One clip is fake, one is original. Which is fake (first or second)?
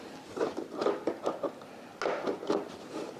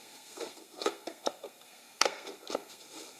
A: second